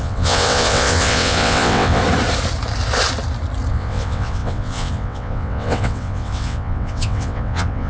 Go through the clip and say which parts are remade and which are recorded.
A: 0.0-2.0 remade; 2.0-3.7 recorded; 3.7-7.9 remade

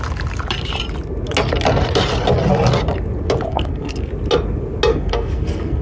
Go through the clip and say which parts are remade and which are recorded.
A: 0.0-3.5 recorded; 3.5-4.1 remade; 4.1-4.9 recorded; 4.9-5.8 remade

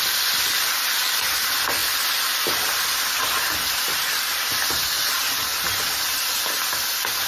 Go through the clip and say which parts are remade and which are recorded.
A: 0.0-7.3 recorded

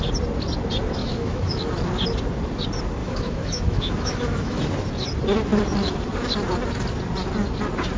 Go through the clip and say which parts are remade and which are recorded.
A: 0.0-1.0 recorded; 1.0-1.7 remade; 1.7-3.0 recorded; 3.0-4.6 remade; 4.6-8.0 recorded

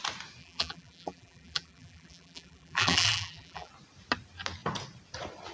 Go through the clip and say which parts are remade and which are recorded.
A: 0.0-0.4 recorded; 0.4-3.7 remade; 3.7-5.5 recorded

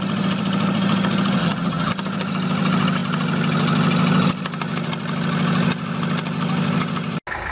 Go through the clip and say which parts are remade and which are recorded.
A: 0.0-1.4 recorded; 1.4-1.9 remade; 1.9-7.5 recorded

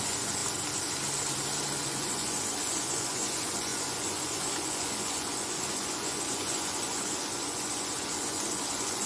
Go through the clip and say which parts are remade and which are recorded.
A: 0.0-0.4 remade; 0.4-1.8 recorded; 1.8-9.1 remade